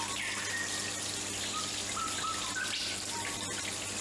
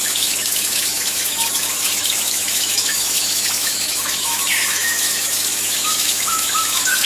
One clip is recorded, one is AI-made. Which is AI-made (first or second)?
second